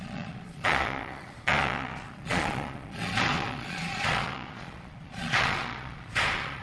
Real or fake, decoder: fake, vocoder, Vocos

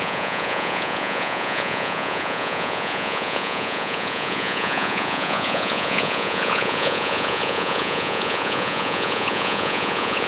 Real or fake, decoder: fake, vocoder, Vocos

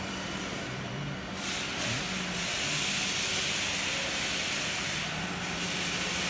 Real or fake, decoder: real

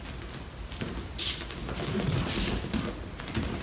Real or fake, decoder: real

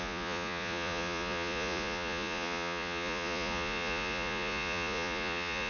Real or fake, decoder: fake, vocoder, Vocos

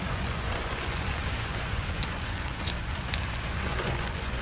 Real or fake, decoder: fake, vocoder, Vocos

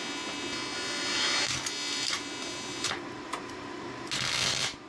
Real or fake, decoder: real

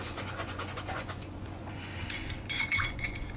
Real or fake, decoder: fake, vocoder, Vocos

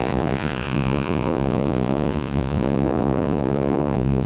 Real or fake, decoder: fake, vocoder, Vocos